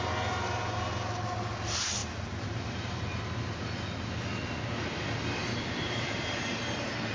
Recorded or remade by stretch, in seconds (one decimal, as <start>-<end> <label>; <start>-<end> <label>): 0.0-2.0 recorded; 2.0-3.1 remade; 3.1-5.4 recorded; 5.4-6.6 remade; 6.6-7.1 recorded